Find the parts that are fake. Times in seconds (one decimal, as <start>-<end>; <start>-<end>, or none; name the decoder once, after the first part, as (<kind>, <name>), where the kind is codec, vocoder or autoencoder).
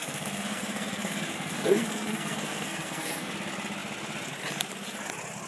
0.0-3.3 (codec, SNAC)